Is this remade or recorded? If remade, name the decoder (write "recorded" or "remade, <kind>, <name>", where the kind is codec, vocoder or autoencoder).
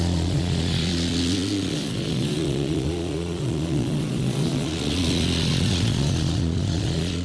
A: remade, vocoder, Vocos